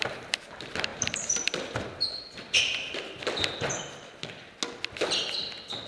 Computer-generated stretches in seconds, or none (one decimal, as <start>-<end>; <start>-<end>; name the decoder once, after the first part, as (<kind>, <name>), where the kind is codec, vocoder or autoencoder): 0.9-4.4 (vocoder, BigVGAN v2)